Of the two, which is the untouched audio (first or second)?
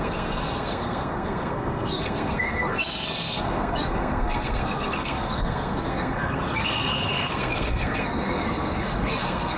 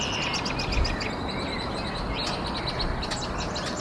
second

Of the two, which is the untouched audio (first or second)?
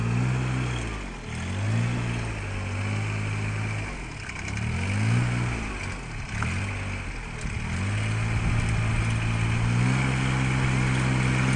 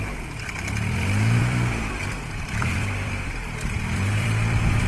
first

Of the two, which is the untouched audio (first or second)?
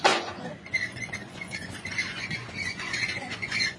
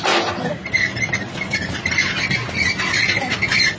second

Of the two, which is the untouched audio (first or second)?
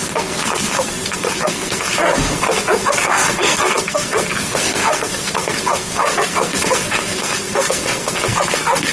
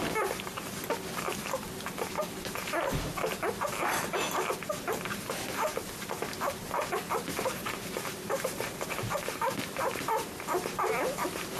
second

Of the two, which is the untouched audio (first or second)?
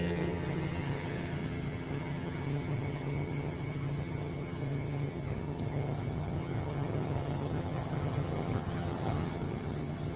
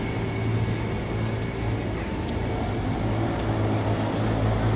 second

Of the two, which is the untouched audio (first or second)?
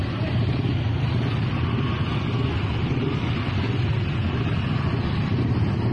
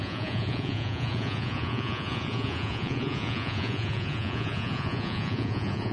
first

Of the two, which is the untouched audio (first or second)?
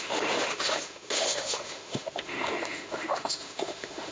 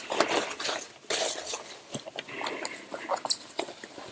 second